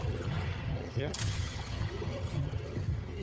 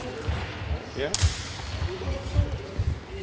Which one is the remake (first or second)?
first